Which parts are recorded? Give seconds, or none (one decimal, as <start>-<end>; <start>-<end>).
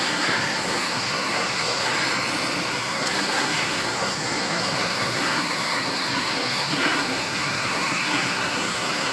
1.9-2.7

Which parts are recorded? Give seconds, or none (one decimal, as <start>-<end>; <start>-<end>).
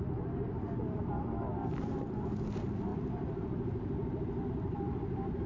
0.0-5.5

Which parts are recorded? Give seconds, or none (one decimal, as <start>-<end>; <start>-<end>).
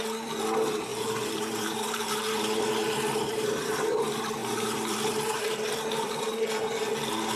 0.0-0.9; 4.0-4.4; 6.2-7.4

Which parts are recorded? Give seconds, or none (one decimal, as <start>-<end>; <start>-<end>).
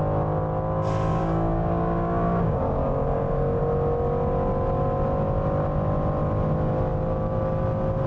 0.0-1.1; 3.6-8.1